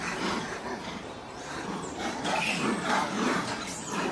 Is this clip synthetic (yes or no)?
yes